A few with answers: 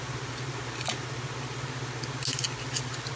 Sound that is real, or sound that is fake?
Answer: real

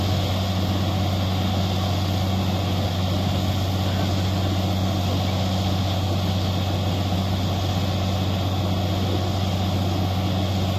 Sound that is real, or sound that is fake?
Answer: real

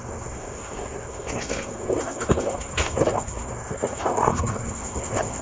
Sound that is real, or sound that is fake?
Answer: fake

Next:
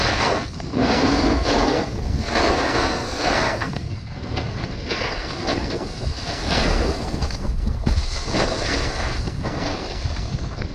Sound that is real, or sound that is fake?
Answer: fake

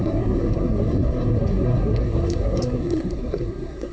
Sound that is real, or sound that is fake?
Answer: fake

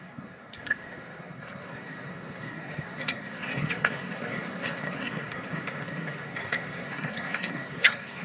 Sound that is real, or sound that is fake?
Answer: fake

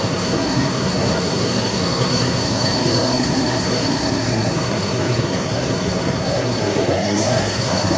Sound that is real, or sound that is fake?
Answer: fake